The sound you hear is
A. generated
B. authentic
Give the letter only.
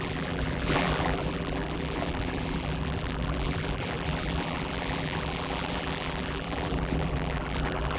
A